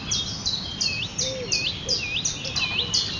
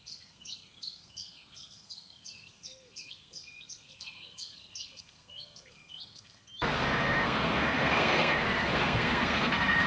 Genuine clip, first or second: first